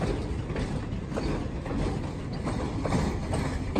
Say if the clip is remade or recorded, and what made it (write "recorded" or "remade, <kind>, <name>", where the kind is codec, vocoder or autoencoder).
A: recorded